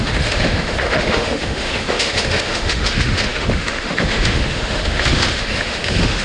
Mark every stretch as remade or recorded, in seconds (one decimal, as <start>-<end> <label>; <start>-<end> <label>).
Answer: 0.0-6.2 remade